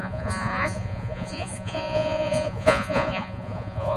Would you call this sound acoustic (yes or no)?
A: no